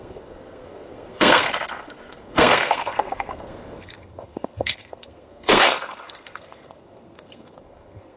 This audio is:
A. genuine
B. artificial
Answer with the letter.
B